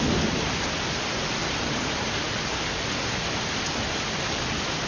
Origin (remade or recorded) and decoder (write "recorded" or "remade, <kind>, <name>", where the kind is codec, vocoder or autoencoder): recorded